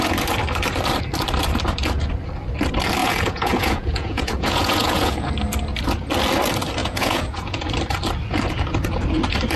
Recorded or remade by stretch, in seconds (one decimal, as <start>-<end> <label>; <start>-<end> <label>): 0.0-3.0 recorded; 3.0-5.3 remade; 5.3-6.8 recorded; 6.8-7.6 remade; 7.6-9.6 recorded